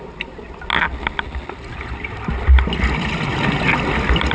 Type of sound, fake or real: real